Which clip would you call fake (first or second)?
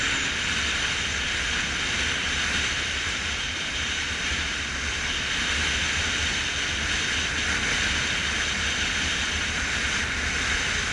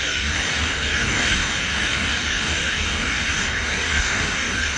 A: second